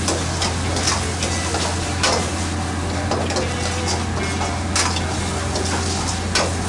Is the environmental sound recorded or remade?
recorded